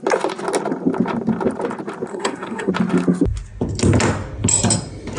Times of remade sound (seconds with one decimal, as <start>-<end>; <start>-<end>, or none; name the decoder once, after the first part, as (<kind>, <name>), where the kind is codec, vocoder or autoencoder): 2.1-2.7 (codec, SNAC)

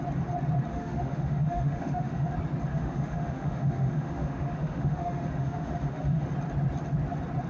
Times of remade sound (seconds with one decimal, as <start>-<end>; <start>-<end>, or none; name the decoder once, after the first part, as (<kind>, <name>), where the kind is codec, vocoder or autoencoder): 0.7-2.3 (autoencoder, DAC-VAE); 2.7-6.3

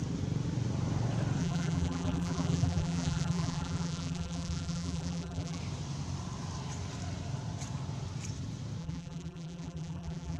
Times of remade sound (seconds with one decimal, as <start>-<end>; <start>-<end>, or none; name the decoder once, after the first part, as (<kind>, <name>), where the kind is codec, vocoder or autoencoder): 1.4-5.6 (vocoder, BigVGAN v2); 8.8-10.4

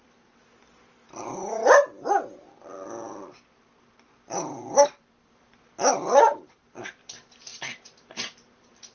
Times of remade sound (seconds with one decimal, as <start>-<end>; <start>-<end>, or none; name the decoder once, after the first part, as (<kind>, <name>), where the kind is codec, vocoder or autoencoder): 0.0-7.5 (vocoder, BigVGAN v2); 8.1-8.9